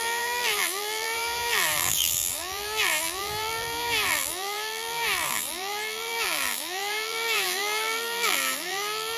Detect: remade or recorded remade